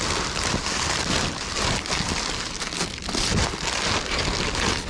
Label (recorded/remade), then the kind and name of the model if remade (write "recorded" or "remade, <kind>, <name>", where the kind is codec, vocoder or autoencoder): recorded